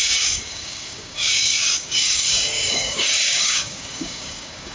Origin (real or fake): fake